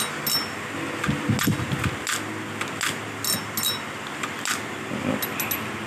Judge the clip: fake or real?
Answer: real